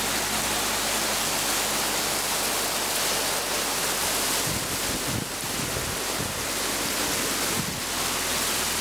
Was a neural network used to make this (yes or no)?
no